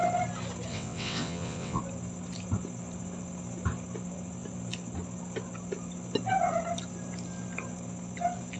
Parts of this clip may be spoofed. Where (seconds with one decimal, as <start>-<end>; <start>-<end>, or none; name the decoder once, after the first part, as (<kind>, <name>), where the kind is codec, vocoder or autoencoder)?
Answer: 0.7-1.8 (vocoder, WaveNeXt)